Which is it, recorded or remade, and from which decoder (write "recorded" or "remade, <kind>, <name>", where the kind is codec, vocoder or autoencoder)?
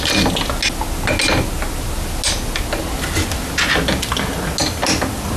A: recorded